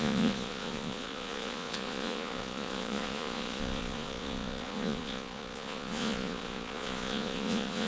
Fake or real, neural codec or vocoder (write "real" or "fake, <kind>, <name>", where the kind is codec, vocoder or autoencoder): fake, vocoder, Vocos